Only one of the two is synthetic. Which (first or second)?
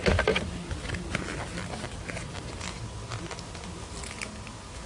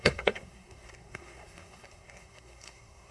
second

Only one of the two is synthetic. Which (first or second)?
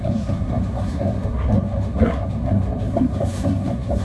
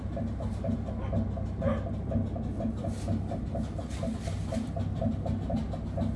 first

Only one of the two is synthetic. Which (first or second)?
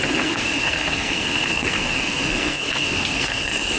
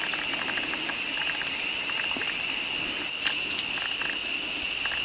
first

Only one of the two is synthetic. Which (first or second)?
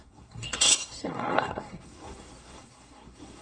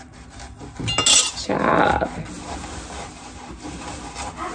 first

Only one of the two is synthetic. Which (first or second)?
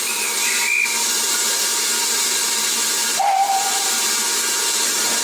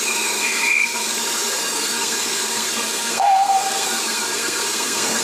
second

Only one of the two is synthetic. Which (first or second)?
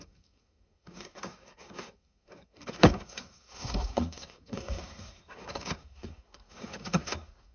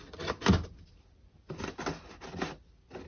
first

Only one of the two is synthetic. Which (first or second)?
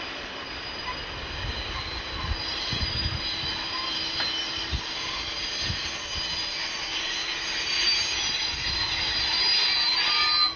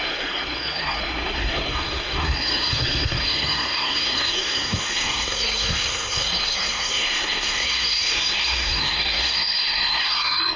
second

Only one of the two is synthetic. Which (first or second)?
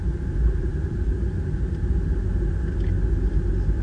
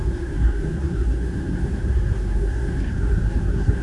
second